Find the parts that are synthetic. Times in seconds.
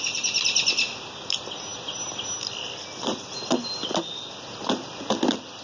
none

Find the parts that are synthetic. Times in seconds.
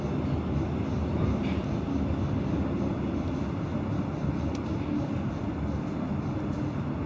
none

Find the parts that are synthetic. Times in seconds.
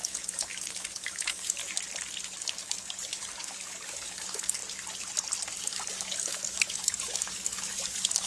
0.0-1.6 (codec, DAC); 2.4-4.6; 5.6-8.3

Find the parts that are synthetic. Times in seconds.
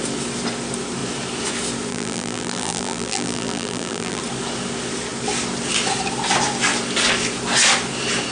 1.9-4.2 (vocoder, BigVGAN v2)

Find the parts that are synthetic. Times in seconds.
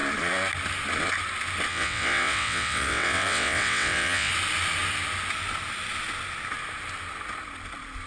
1.7-4.3 (vocoder, WaveNeXt)